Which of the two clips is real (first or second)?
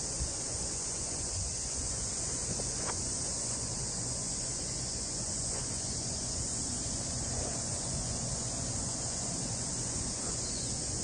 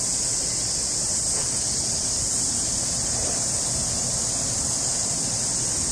second